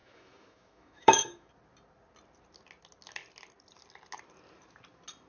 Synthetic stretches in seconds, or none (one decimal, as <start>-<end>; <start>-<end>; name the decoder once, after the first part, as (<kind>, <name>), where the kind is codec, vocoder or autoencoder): 0.0-1.5 (autoencoder, DAC-VAE)